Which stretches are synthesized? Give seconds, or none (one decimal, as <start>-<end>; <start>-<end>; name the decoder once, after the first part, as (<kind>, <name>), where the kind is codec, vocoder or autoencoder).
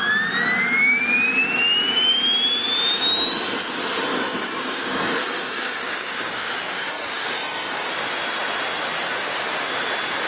4.1-7.9 (codec, DAC)